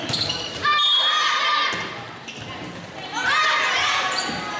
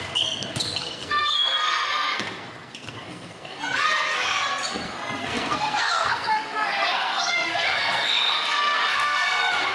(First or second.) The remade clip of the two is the second